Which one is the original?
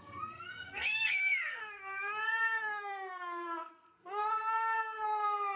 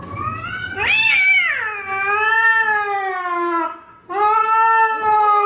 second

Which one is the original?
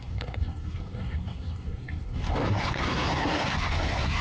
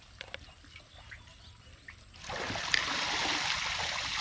second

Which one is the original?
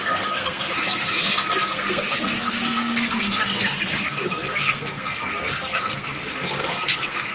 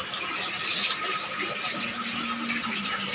second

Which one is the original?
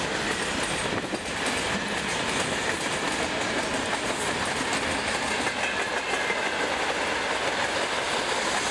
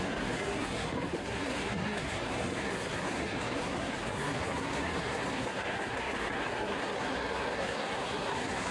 first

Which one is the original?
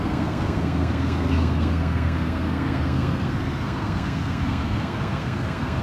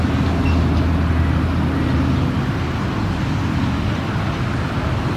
second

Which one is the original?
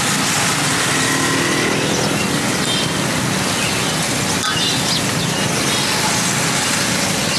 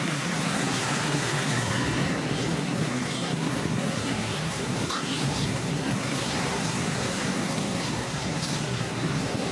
first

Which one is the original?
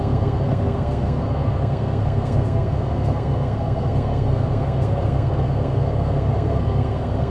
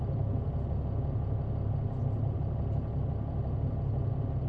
second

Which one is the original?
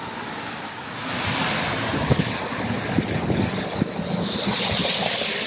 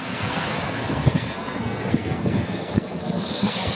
first